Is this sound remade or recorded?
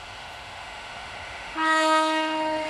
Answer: remade